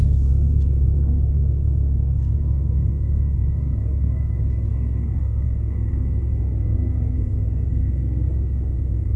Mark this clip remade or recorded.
remade